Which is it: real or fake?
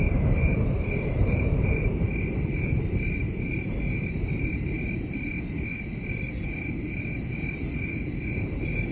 real